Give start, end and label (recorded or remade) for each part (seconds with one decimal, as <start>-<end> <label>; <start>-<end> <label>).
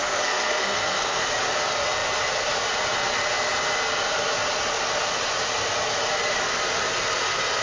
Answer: 0.0-1.2 remade; 1.2-7.6 recorded